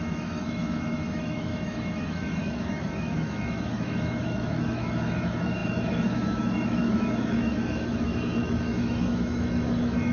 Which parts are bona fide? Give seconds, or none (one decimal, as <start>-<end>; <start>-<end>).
none